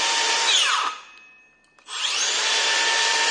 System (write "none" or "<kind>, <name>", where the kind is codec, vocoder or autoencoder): none